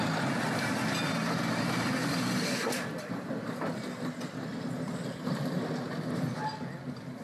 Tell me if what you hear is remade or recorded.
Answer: recorded